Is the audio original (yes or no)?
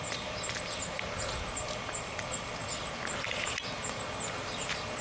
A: yes